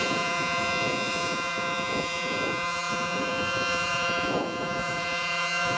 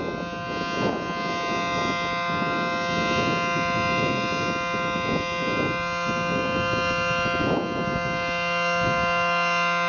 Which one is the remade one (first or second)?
first